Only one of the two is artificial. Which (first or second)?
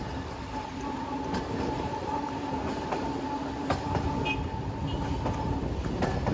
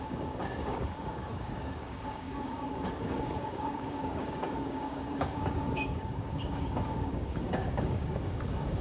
second